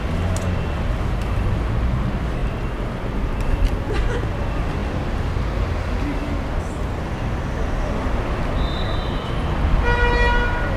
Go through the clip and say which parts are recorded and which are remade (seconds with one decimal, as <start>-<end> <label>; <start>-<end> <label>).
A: 0.0-10.8 recorded